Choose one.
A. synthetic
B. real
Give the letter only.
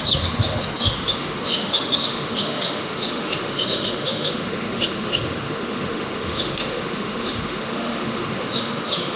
A